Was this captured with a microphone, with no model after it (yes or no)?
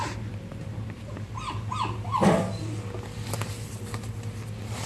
yes